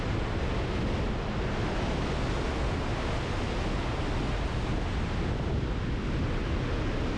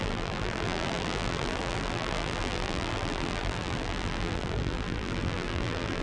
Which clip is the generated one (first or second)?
second